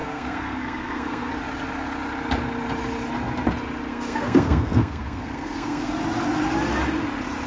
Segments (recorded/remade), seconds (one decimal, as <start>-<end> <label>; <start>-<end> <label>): 0.0-1.3 remade; 1.3-3.9 recorded; 3.9-5.9 remade; 5.9-7.5 recorded